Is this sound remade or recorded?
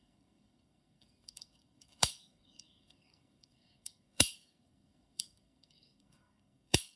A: remade